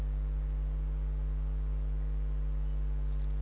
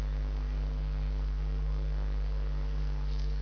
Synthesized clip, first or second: second